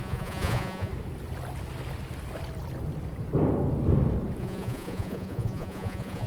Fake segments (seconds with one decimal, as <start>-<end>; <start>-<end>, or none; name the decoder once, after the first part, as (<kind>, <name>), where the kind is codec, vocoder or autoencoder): 0.0-0.9 (vocoder, Vocos); 4.4-6.3